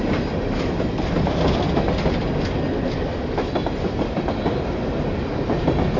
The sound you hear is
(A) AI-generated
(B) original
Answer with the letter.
B